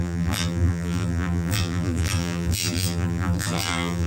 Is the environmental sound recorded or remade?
remade